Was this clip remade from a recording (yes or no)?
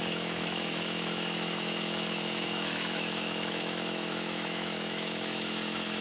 yes